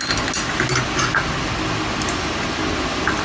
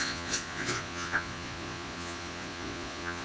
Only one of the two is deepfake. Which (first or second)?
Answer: second